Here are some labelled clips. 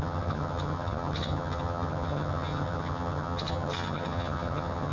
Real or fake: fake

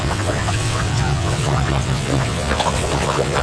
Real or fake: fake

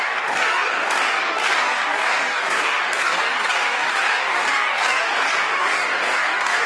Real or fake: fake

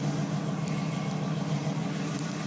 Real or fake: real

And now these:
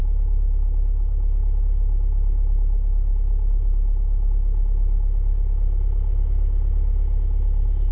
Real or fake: real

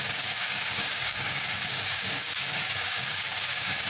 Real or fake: fake